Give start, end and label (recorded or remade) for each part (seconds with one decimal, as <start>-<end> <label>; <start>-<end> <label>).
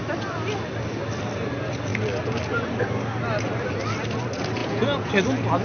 0.0-4.6 recorded; 4.6-5.1 remade; 5.1-5.6 recorded